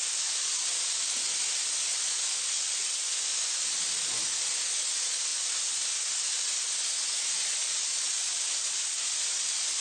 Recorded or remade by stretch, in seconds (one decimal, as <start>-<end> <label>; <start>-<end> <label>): 0.0-9.8 recorded